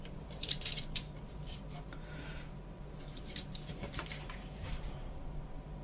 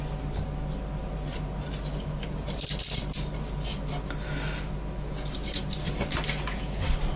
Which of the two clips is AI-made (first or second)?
first